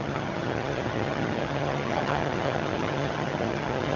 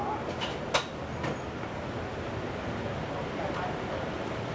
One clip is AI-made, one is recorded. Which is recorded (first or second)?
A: second